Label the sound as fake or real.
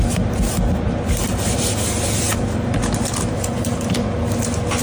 real